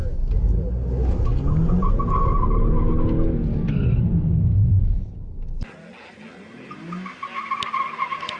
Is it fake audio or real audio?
real